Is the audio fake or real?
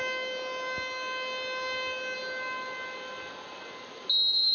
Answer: real